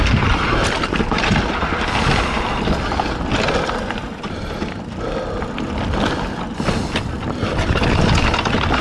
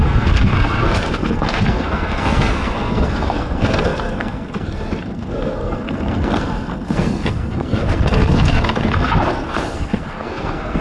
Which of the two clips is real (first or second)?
first